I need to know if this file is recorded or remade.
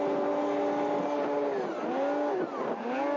recorded